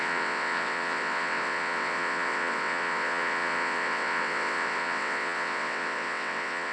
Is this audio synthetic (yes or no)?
yes